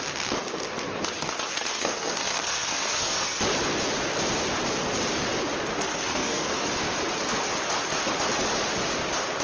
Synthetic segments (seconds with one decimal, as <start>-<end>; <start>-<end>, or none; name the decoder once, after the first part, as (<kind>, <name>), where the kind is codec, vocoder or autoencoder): 1.5-3.4 (codec, SNAC); 5.7-6.7